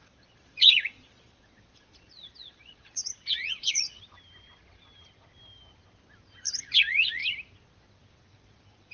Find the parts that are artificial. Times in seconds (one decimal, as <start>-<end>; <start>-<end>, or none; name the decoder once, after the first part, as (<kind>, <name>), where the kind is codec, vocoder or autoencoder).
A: 0.0-4.0 (vocoder, Vocos); 6.6-7.2; 8.1-8.9